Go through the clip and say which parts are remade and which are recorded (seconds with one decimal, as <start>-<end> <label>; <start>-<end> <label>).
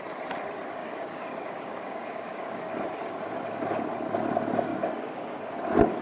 0.0-0.8 recorded; 0.8-2.7 remade; 2.7-4.7 recorded; 4.7-5.4 remade; 5.4-6.0 recorded